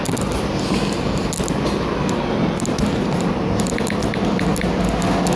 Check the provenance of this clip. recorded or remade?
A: recorded